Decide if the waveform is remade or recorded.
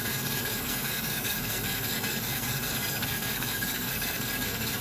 remade